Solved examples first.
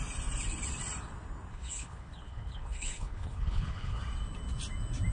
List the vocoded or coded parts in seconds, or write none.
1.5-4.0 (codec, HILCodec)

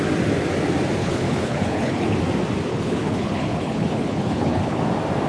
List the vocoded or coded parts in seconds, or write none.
1.0-2.2 (codec, HILCodec); 2.7-4.8